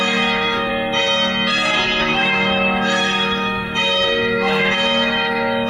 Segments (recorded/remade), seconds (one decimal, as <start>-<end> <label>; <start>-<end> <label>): 0.0-0.7 remade; 0.7-2.0 recorded; 2.0-5.7 remade